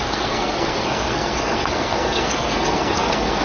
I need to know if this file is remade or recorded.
remade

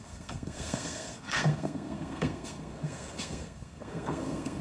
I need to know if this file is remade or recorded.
remade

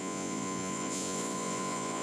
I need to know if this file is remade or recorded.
remade